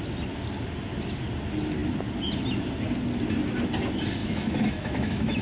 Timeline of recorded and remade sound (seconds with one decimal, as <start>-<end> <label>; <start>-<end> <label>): 0.0-4.2 recorded; 4.2-5.4 remade